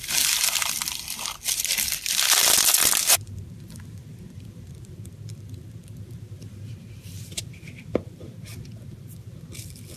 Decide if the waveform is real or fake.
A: fake